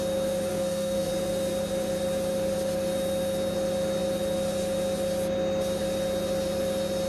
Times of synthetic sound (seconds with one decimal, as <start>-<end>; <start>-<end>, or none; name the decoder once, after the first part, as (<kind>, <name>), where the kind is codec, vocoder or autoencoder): 0.5-1.1 (codec, SNAC)